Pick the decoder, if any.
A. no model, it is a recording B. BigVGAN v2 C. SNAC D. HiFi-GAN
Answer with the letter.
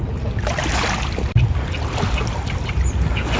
A